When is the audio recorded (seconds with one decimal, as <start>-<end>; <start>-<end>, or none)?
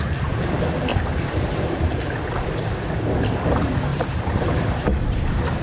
0.0-0.9; 2.3-3.9